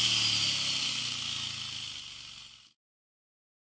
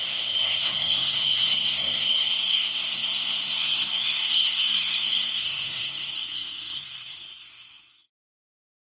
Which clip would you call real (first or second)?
first